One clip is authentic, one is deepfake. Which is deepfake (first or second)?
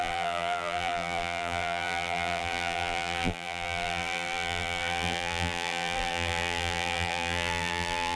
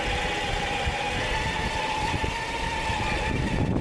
first